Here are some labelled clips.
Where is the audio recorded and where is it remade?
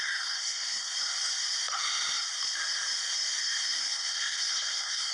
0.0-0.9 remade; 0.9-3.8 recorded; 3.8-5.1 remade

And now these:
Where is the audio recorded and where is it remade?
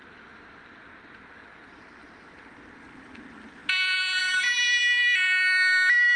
0.0-6.2 recorded